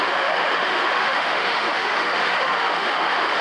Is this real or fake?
fake